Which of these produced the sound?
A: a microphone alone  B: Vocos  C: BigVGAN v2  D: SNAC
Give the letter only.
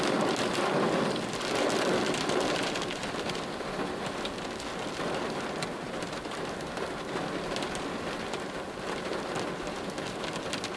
A